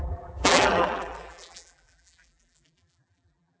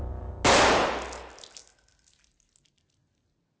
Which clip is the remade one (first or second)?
first